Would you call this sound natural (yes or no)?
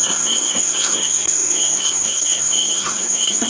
no